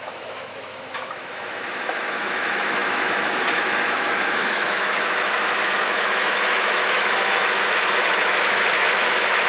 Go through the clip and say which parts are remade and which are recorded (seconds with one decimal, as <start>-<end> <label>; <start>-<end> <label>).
0.0-9.5 remade